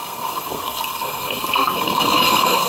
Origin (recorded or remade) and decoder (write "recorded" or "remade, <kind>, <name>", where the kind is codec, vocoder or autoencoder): remade, codec, SNAC